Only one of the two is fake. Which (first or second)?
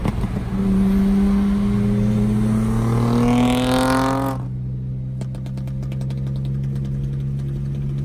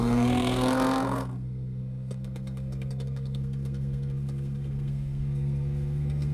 second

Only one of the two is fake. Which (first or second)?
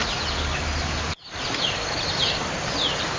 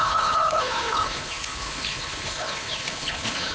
second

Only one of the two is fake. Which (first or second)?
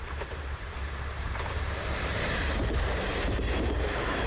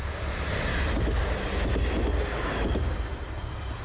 first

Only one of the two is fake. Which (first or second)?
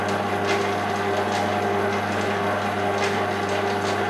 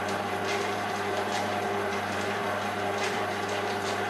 second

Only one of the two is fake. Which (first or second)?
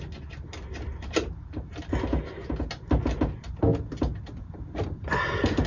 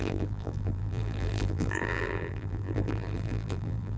second